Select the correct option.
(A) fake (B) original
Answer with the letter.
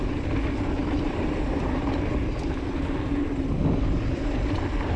B